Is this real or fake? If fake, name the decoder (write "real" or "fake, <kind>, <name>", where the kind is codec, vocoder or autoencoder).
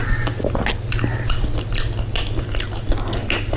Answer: real